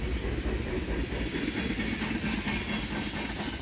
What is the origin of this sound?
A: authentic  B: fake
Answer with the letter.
A